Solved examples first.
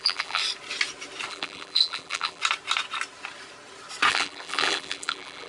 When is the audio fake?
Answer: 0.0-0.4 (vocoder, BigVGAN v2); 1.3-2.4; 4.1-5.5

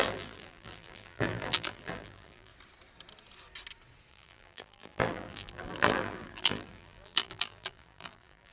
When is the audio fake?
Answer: 0.0-2.5 (vocoder, BigVGAN v2); 4.1-8.5

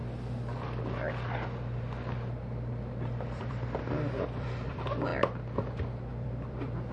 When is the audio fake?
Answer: 3.4-5.1 (vocoder, BigVGAN v2); 6.1-6.9